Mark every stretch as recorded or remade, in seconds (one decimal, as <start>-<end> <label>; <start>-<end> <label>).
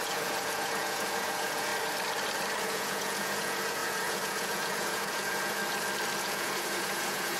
0.0-1.7 remade; 1.7-2.6 recorded; 2.6-5.6 remade; 5.6-6.2 recorded; 6.2-7.4 remade